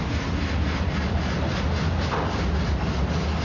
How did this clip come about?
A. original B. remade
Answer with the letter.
A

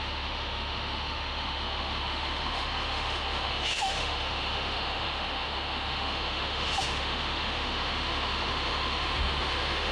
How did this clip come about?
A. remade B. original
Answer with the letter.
A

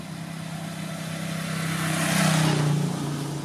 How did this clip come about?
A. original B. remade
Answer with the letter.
A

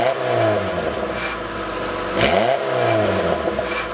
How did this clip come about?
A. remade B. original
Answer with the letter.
B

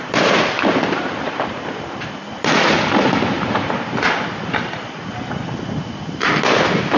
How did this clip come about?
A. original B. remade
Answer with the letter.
A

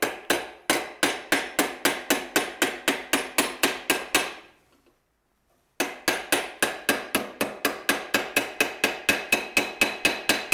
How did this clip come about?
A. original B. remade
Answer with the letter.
A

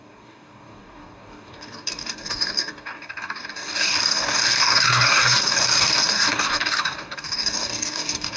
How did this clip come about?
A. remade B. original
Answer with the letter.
A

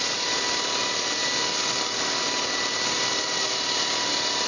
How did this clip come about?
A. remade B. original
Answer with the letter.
B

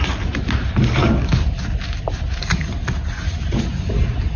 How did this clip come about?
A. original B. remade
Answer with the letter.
A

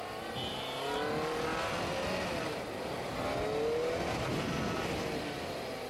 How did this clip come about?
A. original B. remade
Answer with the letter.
A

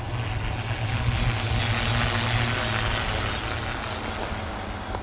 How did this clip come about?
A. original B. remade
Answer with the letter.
A